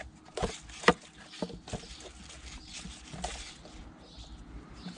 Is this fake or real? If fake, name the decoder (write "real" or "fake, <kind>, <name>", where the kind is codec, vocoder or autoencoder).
real